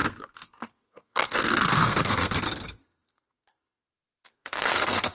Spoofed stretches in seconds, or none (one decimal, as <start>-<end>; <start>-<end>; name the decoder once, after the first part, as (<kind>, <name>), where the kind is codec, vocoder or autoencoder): 0.0-5.1 (codec, SNAC)